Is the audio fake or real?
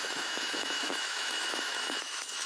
fake